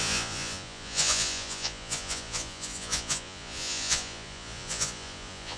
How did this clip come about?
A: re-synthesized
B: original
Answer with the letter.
A